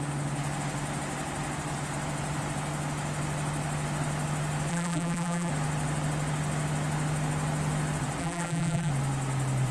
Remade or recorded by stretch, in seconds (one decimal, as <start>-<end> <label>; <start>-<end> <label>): 0.0-4.7 recorded; 4.7-5.5 remade; 5.5-8.2 recorded; 8.2-8.9 remade; 8.9-9.7 recorded